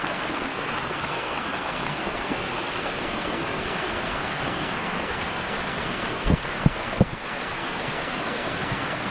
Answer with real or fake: fake